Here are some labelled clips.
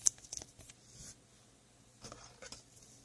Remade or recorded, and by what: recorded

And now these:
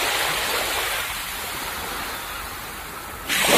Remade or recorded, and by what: recorded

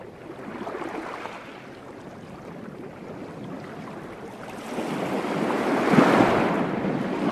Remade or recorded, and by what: recorded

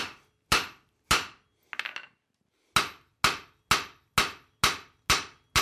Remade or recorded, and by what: recorded